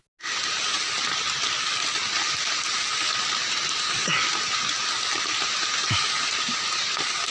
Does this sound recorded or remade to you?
recorded